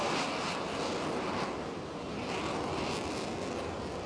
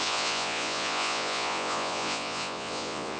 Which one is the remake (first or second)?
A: second